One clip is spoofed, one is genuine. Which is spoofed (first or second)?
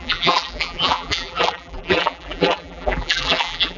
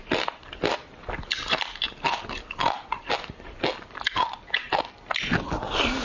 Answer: first